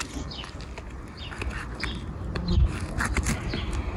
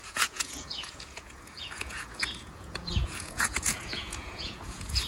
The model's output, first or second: second